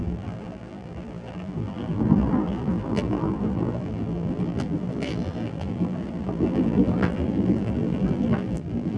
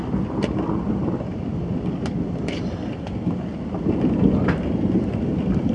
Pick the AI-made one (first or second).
first